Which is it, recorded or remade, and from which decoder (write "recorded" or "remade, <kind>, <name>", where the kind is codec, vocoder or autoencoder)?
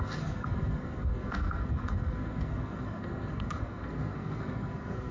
remade, codec, SNAC